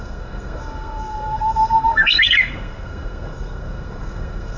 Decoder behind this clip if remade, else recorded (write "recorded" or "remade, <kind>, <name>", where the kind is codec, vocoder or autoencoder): remade, codec, SNAC